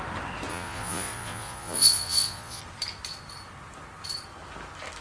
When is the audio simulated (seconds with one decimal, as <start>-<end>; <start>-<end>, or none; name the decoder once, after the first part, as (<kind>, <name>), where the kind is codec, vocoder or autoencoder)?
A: 0.5-2.6 (vocoder, Vocos)